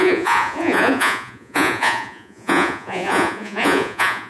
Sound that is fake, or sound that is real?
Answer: fake